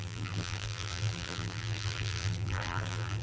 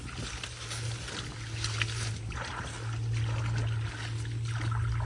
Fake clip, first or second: first